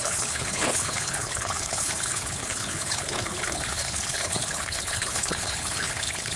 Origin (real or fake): fake